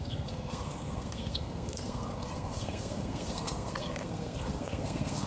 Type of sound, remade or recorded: remade